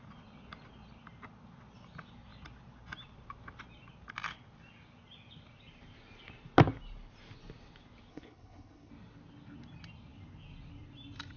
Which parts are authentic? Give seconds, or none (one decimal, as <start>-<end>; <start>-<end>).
0.0-8.1; 8.9-11.4